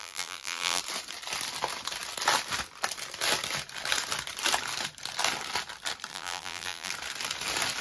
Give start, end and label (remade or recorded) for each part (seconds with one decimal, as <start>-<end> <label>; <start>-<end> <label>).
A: 0.0-0.8 remade; 0.8-6.1 recorded; 6.1-6.9 remade; 6.9-7.8 recorded